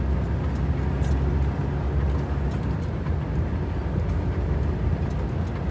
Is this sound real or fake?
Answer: real